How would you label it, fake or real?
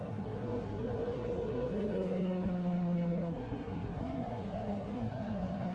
fake